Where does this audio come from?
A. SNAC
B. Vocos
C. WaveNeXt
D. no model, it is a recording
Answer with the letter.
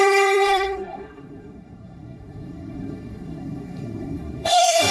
A